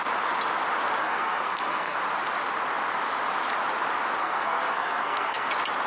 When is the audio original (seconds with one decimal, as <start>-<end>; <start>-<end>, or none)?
0.0-1.0; 2.0-4.2; 5.5-5.9